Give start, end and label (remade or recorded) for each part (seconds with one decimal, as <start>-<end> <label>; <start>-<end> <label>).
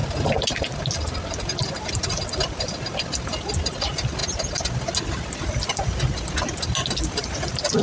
0.0-7.8 recorded